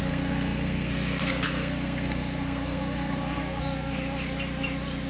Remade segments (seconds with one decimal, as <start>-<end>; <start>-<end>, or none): 0.0-4.0